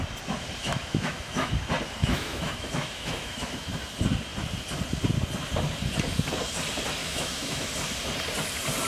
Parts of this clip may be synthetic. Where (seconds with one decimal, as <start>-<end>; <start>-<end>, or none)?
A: 0.6-1.5; 2.0-3.7; 7.0-7.7